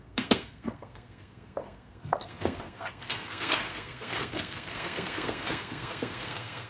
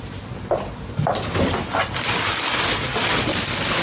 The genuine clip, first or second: second